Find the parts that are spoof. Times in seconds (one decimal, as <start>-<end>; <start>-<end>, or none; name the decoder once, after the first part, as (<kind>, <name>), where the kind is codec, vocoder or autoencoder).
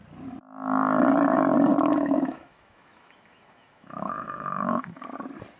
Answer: 1.7-5.0 (autoencoder, DAC-VAE)